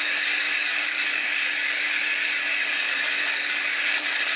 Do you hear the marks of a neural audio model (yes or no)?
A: yes